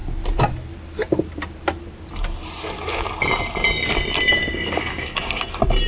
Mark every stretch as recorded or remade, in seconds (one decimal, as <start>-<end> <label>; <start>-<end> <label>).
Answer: 0.0-4.3 recorded; 4.3-5.4 remade; 5.4-5.9 recorded